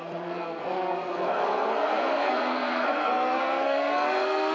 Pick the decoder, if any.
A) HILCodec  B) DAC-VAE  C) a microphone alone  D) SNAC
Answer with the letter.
D